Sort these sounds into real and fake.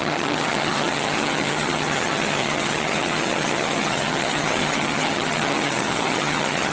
fake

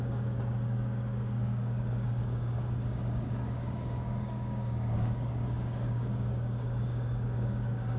fake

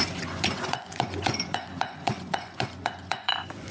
fake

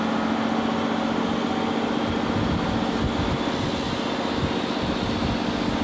real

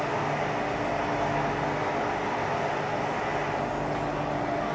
real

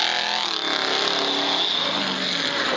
real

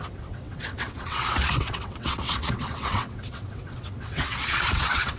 fake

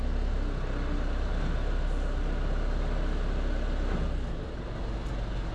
real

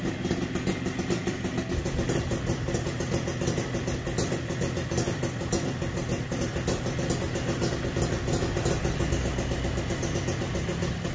real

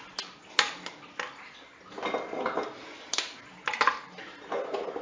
real